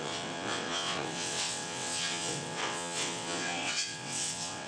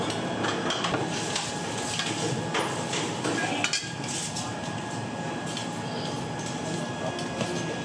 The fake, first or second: first